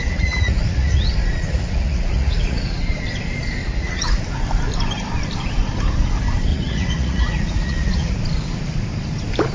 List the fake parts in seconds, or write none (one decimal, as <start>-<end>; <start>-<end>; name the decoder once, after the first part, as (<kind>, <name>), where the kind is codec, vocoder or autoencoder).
0.0-2.8 (vocoder, Vocos); 3.6-4.2; 6.5-8.1